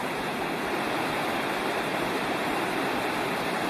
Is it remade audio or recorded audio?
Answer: recorded